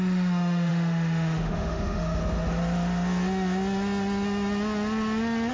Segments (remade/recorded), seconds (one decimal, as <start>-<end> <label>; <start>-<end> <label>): 0.0-2.2 remade; 2.2-5.5 recorded